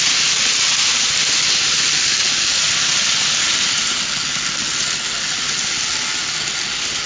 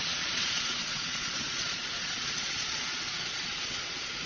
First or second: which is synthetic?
second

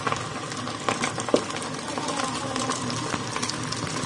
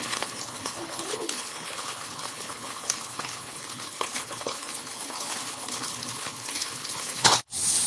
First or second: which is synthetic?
second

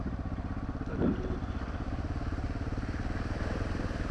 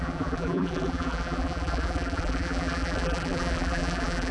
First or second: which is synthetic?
second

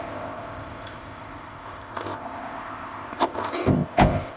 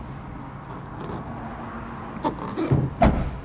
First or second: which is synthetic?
first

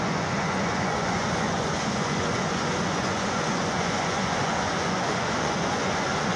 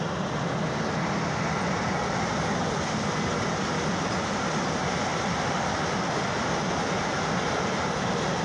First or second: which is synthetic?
first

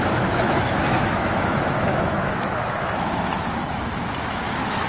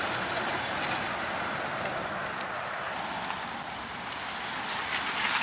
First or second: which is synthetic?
first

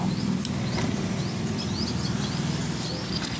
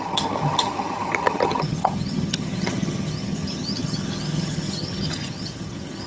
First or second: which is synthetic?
second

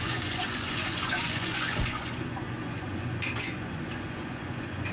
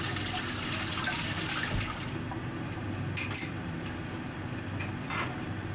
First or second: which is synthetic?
first